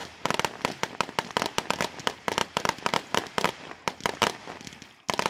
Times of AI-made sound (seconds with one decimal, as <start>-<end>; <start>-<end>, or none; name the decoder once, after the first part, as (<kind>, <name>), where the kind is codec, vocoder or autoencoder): 2.4-3.5 (vocoder, BigVGAN v2)